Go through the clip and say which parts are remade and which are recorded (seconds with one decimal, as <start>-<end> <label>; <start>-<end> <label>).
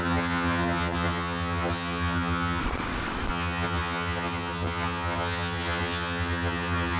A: 0.0-2.6 remade; 2.6-3.3 recorded; 3.3-7.0 remade